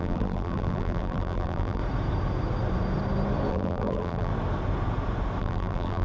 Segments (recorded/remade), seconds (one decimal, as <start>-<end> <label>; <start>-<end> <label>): 0.0-1.8 remade; 1.8-3.5 recorded; 3.5-4.3 remade; 4.3-5.4 recorded; 5.4-6.0 remade